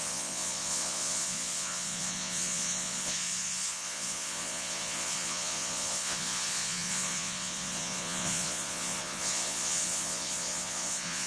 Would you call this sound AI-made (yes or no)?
yes